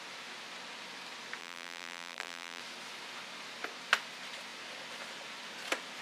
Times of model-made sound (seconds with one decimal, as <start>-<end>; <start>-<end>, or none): 1.4-2.6

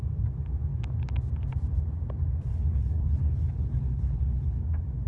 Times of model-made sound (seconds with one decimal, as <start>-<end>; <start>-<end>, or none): 2.5-4.6